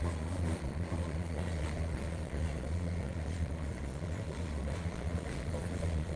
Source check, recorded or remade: remade